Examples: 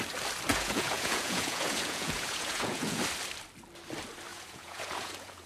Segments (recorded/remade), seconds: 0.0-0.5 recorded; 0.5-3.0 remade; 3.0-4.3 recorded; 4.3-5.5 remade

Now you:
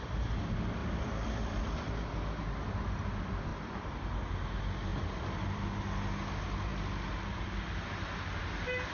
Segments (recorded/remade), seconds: 0.0-0.8 recorded; 0.8-1.6 remade; 1.6-3.5 recorded; 3.5-4.1 remade; 4.1-4.9 recorded; 4.9-5.8 remade; 5.8-8.9 recorded

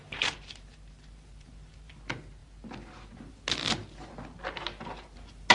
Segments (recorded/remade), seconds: 0.0-1.9 remade; 1.9-5.5 recorded

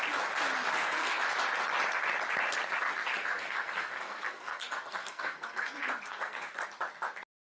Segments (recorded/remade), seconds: 0.0-0.7 recorded; 0.7-1.2 remade; 1.2-3.2 recorded; 3.2-6.6 remade; 6.6-7.5 recorded

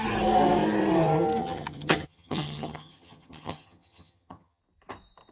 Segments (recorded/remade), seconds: 0.0-1.4 recorded; 1.4-4.6 remade; 4.6-5.3 recorded

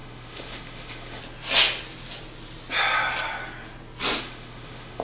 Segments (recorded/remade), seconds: 0.0-1.2 remade; 1.2-4.2 recorded; 4.2-5.0 remade

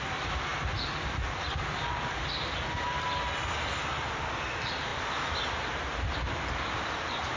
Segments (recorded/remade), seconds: 0.0-7.4 recorded

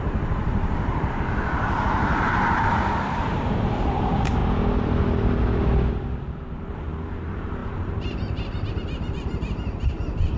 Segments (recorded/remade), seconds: 0.0-4.4 remade; 4.4-5.9 recorded; 5.9-10.4 remade